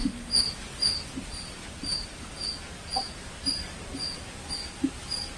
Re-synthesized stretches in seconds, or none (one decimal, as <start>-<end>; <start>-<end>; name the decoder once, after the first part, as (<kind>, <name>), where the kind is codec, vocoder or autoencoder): none